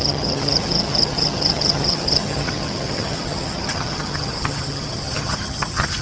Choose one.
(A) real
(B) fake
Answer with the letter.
B